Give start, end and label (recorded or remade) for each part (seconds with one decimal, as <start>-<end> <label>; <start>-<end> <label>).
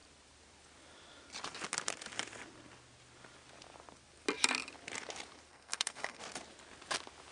0.0-5.5 recorded; 5.5-6.2 remade; 6.2-7.3 recorded